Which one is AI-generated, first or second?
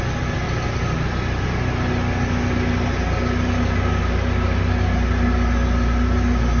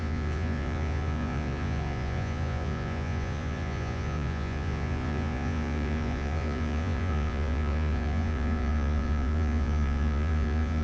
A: second